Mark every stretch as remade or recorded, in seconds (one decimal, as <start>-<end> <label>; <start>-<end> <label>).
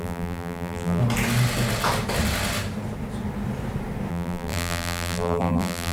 0.0-1.0 remade; 1.0-4.1 recorded; 4.1-5.9 remade